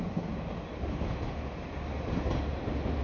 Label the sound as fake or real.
real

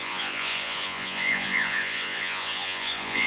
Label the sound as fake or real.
fake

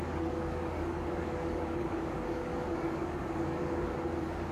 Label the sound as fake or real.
fake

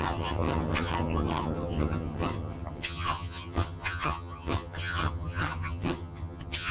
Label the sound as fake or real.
fake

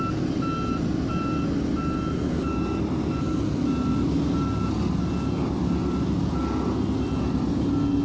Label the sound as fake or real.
real